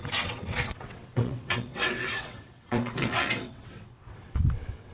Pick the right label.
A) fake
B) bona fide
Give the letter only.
A